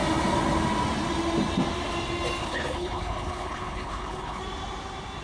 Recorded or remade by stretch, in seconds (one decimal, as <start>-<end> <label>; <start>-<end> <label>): 0.0-2.4 recorded; 2.4-4.4 remade; 4.4-5.2 recorded

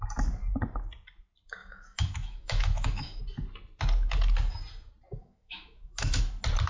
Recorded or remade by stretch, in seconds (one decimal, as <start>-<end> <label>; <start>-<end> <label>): 0.0-1.6 recorded; 1.6-3.2 remade; 3.2-5.2 recorded; 5.2-6.2 remade; 6.2-6.7 recorded

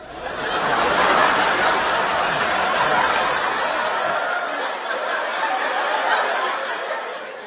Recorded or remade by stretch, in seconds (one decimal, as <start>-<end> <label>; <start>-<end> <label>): 0.0-7.5 recorded

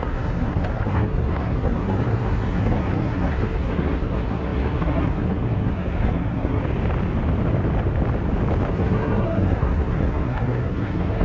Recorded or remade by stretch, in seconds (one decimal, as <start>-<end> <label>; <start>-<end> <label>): 0.0-6.6 remade; 6.6-8.7 recorded; 8.7-11.2 remade

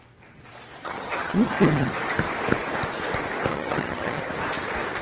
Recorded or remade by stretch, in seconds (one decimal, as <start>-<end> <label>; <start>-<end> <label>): 0.0-0.8 recorded; 0.8-1.9 remade; 1.9-3.5 recorded; 3.5-4.2 remade; 4.2-5.0 recorded

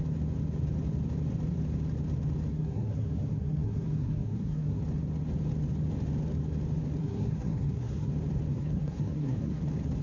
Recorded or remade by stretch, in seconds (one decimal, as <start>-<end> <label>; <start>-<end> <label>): 0.0-2.5 recorded; 2.5-4.8 remade; 4.8-7.0 recorded; 7.0-8.1 remade; 8.1-8.5 recorded; 8.5-9.6 remade; 9.6-10.0 recorded

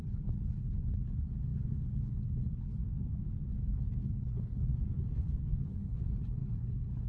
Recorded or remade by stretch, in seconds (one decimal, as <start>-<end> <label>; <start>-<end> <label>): 0.0-2.8 remade; 2.8-4.0 recorded; 4.0-4.7 remade; 4.7-5.6 recorded; 5.6-7.1 remade

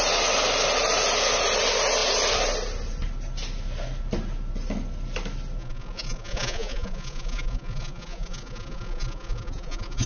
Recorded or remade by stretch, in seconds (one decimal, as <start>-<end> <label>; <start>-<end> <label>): 0.0-5.6 recorded; 5.6-10.1 remade